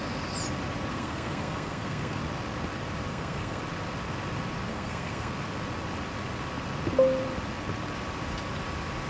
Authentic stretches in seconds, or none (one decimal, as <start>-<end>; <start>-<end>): 0.0-0.9; 2.2-3.1; 3.6-4.7; 5.3-9.1